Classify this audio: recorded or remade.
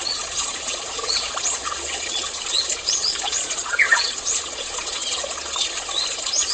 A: remade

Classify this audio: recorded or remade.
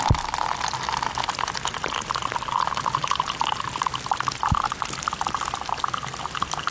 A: recorded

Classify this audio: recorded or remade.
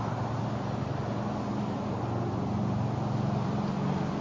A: recorded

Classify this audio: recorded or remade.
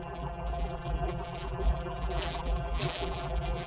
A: remade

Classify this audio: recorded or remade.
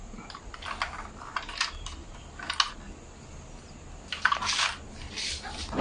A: recorded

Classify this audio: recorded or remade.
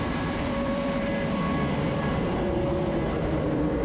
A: remade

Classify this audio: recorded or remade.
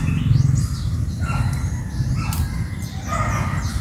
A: recorded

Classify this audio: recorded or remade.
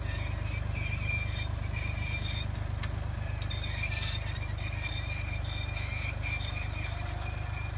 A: recorded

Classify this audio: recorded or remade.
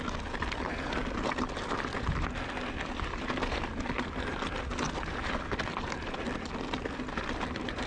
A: recorded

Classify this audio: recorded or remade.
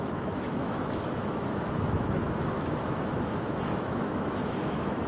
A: remade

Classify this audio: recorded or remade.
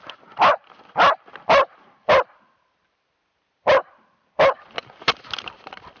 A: recorded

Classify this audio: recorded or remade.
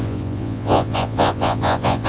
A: remade